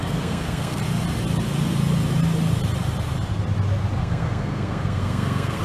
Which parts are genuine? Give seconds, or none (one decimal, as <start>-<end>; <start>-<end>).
0.8-4.0